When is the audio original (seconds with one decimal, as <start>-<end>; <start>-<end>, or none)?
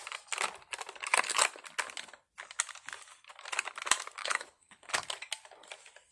0.0-4.2; 4.9-6.1